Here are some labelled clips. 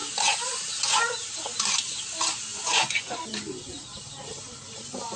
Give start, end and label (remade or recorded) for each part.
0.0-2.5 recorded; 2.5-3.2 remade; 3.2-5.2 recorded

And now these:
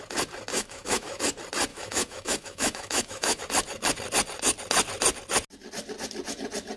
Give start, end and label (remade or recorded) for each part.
0.0-0.5 recorded; 0.5-1.2 remade; 1.2-1.7 recorded; 1.7-3.4 remade; 3.4-6.8 recorded

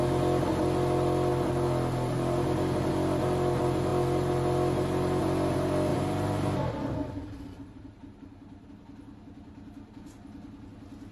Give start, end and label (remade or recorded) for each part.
0.0-5.9 recorded; 5.9-8.7 remade; 8.7-11.1 recorded

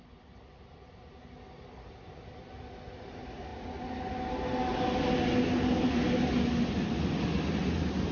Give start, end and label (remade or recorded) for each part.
0.0-8.1 recorded